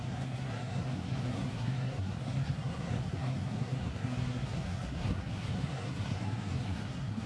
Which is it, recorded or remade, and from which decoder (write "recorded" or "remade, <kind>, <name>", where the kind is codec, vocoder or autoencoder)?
remade, codec, SNAC